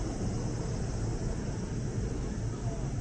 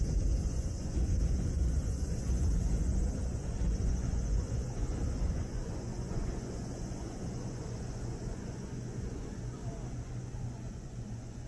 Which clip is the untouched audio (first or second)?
first